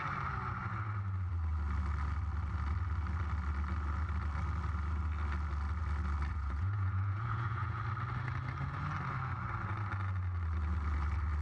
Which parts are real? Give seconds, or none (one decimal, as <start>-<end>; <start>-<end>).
0.0-6.3; 7.8-11.4